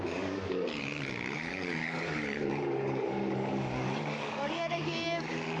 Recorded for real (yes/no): no